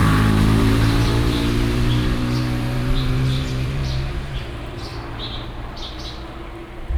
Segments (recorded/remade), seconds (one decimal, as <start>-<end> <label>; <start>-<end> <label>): 0.0-4.9 remade; 4.9-7.0 recorded